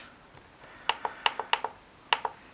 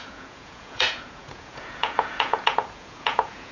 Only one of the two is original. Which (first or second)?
first